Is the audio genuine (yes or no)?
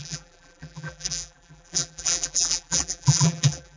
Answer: no